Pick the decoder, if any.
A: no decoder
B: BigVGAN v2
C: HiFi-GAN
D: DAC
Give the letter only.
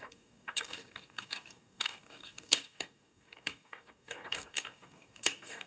D